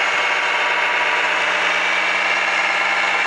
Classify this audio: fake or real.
real